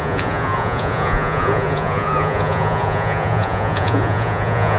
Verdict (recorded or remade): remade